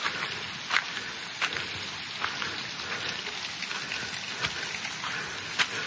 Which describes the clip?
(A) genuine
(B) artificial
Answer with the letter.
A